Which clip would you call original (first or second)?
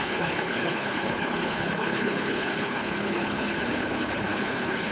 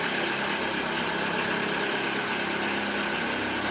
second